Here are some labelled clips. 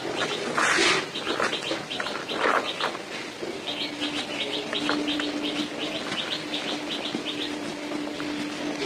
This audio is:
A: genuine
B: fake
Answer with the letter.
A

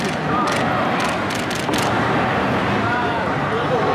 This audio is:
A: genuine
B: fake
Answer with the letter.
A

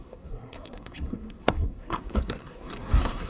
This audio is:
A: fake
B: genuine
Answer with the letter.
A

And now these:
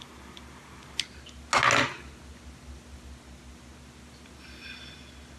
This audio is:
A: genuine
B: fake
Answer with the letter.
A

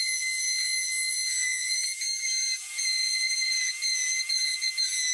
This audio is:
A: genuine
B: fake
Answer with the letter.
B